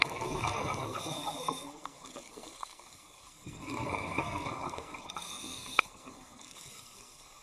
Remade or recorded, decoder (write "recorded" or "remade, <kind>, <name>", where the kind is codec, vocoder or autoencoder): remade, codec, SNAC